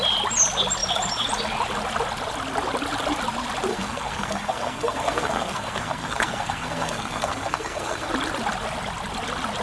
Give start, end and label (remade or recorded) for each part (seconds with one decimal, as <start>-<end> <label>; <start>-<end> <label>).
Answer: 0.0-3.7 recorded; 3.7-8.1 remade; 8.1-9.6 recorded

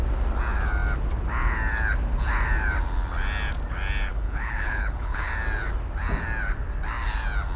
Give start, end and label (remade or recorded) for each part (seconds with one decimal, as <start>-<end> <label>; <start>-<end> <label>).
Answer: 0.0-4.1 recorded; 4.1-5.3 remade; 5.3-7.6 recorded

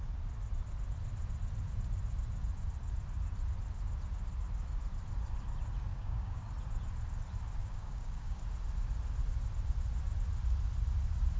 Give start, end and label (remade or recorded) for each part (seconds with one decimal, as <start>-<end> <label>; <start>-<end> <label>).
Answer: 0.0-5.9 recorded; 5.9-6.5 remade; 6.5-7.6 recorded; 7.6-8.4 remade; 8.4-11.4 recorded